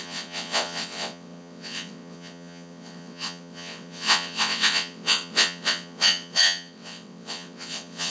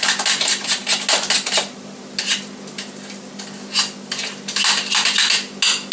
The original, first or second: second